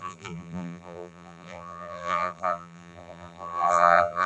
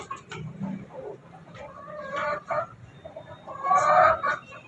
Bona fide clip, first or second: second